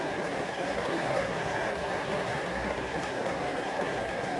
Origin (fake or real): fake